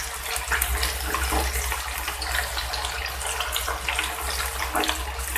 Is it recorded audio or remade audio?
recorded